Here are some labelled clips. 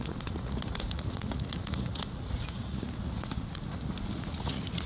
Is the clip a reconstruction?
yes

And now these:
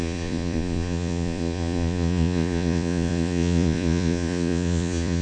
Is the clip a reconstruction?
yes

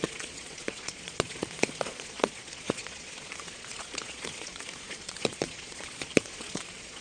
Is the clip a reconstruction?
yes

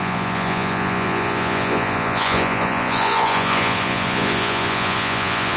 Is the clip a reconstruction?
yes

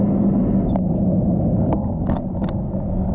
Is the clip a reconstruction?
no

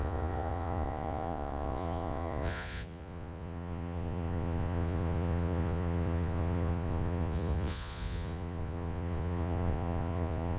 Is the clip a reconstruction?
yes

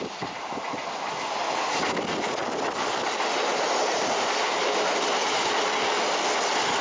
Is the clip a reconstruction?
no